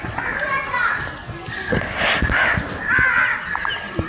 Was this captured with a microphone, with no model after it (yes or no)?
yes